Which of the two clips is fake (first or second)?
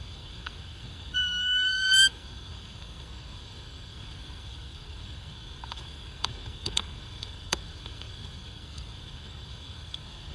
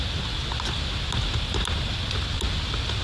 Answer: first